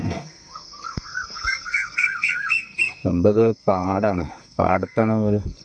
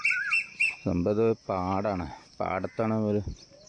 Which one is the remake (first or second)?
first